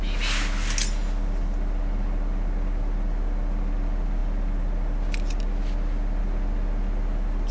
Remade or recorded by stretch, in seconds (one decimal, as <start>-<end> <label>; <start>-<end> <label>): 0.0-7.5 recorded